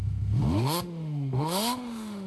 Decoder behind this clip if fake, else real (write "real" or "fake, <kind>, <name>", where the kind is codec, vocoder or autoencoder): fake, autoencoder, DAC-VAE